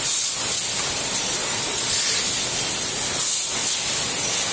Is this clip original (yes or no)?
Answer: yes